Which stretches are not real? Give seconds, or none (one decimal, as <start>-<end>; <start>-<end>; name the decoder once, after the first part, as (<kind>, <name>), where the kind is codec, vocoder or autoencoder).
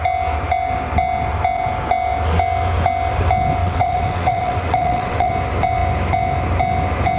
3.6-5.3 (vocoder, WaveNeXt)